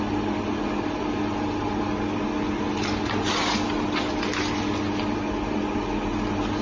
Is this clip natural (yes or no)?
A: yes